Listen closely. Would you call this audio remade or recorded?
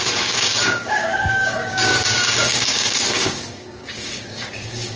remade